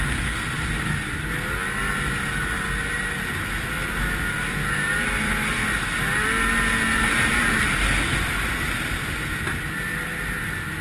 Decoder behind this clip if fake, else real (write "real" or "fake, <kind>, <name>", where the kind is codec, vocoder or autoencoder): real